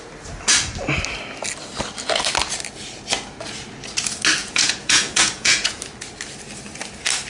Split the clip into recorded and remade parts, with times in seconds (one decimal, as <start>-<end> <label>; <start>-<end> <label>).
0.0-4.4 recorded; 4.4-5.8 remade; 5.8-7.3 recorded